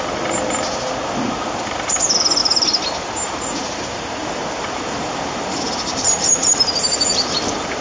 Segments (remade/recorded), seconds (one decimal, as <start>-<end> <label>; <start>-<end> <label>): 0.0-2.4 recorded; 2.4-3.8 remade; 3.8-4.2 recorded; 4.2-7.8 remade